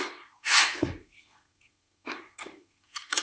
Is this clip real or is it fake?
fake